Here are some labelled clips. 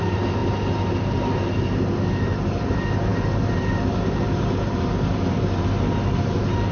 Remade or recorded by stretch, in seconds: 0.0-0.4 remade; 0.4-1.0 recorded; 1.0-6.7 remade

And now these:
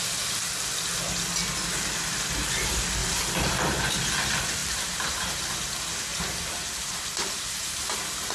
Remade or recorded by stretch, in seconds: 0.0-3.0 recorded; 3.0-3.8 remade; 3.8-4.6 recorded; 4.6-5.4 remade; 5.4-6.1 recorded; 6.1-7.6 remade; 7.6-8.3 recorded

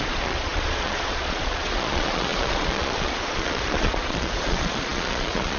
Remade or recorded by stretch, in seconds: 0.0-5.6 remade

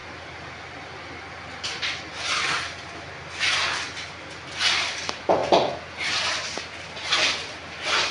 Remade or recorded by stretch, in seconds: 0.0-4.7 recorded; 4.7-5.4 remade; 5.4-7.4 recorded; 7.4-8.1 remade

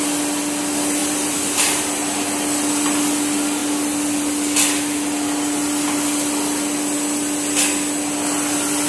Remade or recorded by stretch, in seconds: 0.0-1.0 recorded; 1.0-1.8 remade; 1.8-8.9 recorded

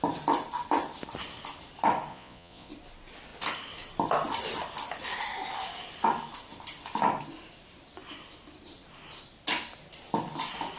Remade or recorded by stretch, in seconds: 0.0-2.1 recorded; 2.1-2.7 remade; 2.7-10.8 recorded

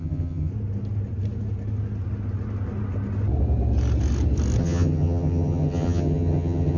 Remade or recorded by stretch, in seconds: 0.0-0.5 remade; 0.5-4.6 recorded; 4.6-6.8 remade